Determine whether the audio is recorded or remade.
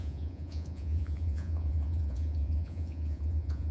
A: remade